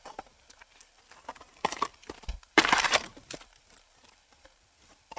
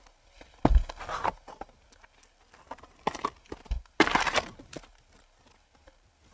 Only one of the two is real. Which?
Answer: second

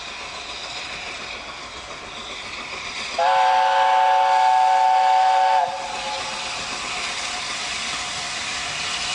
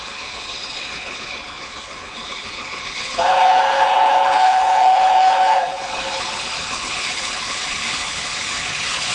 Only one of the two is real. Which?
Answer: first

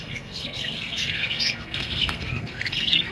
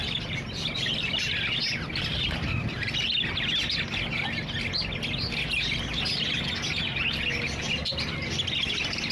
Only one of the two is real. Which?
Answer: second